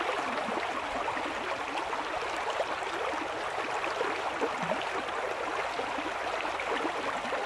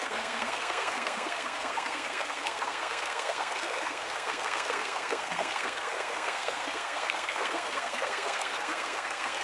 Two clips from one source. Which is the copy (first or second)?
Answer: second